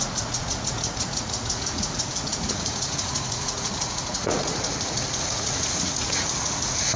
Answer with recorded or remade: remade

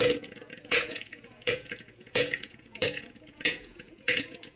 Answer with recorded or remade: remade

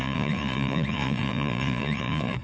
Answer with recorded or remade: remade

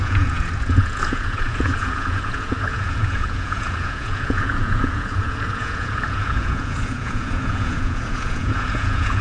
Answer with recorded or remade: remade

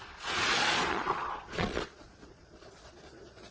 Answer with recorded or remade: remade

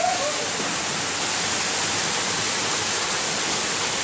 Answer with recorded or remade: recorded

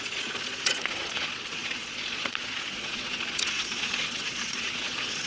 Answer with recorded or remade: remade